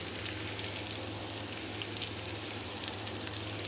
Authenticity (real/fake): real